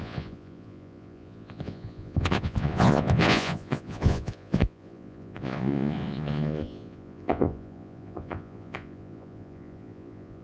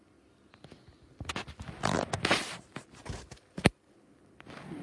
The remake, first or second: first